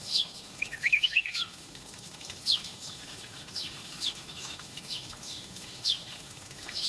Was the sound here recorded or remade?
remade